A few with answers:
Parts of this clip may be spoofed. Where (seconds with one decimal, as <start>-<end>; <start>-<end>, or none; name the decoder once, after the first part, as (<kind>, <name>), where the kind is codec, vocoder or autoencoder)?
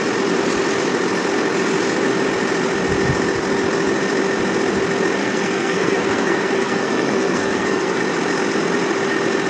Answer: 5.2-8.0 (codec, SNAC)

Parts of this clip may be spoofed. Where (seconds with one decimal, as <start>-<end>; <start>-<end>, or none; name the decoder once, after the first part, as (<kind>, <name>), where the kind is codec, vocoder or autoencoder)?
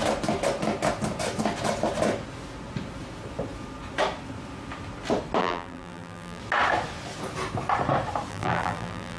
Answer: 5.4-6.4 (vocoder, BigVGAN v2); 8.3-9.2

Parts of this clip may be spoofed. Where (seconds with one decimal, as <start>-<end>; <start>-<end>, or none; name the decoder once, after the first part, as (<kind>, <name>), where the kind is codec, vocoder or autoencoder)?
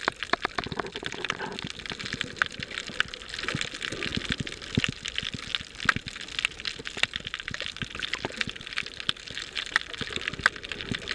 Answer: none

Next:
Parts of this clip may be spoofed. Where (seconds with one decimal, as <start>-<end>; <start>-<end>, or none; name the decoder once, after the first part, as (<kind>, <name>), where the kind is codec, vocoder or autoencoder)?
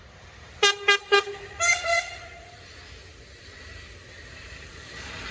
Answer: 0.0-1.7 (vocoder, BigVGAN v2); 4.5-5.3